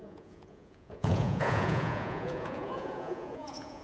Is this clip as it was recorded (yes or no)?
no